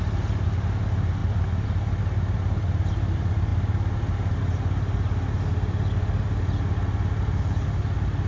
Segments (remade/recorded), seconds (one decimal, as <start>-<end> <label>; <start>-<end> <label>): 0.0-8.3 recorded